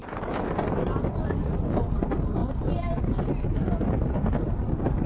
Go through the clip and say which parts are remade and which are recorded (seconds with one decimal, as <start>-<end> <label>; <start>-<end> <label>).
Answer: 0.0-5.1 remade